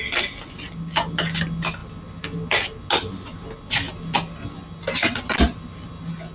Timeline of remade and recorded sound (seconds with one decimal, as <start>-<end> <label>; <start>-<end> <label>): 0.0-6.3 recorded